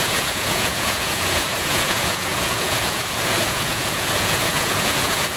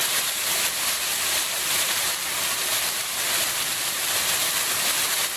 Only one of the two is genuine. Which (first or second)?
second